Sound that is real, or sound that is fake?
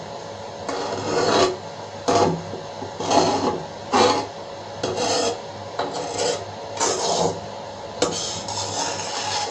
real